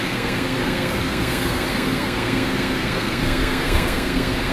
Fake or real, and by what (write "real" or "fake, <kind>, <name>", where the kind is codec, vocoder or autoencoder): fake, codec, SNAC